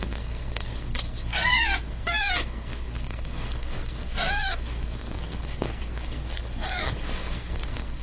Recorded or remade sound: remade